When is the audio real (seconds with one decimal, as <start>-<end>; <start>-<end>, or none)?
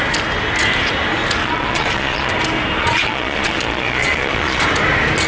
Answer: 0.0-1.4; 2.3-2.8; 4.6-5.3